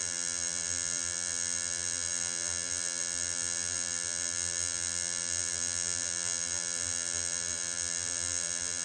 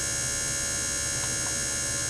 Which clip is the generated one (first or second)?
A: first